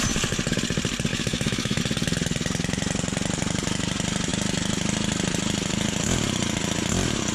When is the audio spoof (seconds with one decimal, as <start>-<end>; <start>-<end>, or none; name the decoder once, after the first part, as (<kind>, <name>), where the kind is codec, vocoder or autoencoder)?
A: 1.1-1.8 (autoencoder, DAC-VAE)